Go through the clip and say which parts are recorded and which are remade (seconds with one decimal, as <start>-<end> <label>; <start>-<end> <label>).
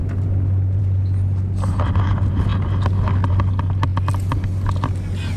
0.0-5.4 recorded